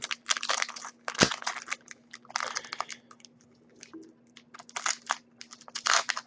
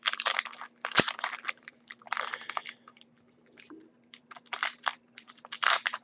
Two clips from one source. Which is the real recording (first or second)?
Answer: first